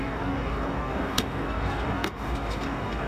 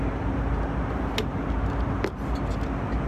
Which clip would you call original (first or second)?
second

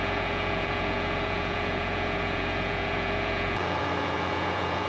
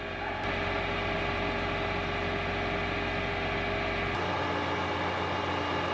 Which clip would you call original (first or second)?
second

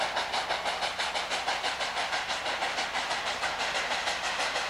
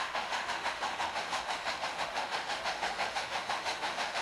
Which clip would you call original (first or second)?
first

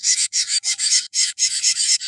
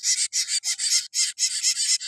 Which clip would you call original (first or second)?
second